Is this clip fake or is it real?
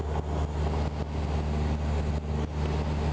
real